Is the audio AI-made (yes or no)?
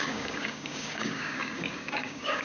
yes